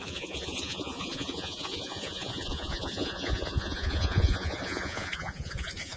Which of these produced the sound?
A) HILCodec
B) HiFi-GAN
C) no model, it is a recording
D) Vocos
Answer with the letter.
D